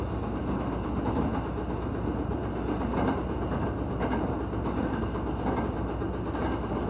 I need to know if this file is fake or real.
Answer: real